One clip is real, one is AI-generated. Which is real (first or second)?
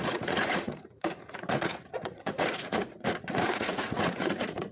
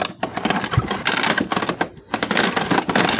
second